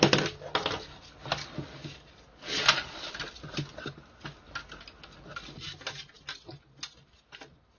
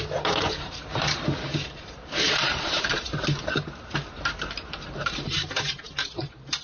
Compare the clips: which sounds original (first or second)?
first